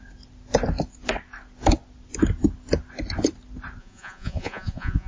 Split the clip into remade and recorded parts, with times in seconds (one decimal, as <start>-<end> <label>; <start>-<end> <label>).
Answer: 0.0-3.8 recorded; 3.8-5.1 remade